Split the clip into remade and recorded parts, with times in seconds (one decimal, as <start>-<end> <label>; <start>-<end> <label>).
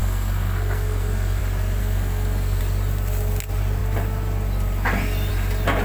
0.0-1.4 remade; 1.4-1.8 recorded; 1.8-2.6 remade; 2.6-5.8 recorded